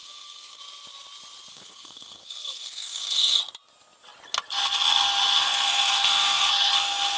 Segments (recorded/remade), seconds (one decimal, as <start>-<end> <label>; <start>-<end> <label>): 0.0-0.6 remade; 0.6-1.5 recorded; 1.5-3.4 remade; 3.4-5.4 recorded; 5.4-6.7 remade; 6.7-7.2 recorded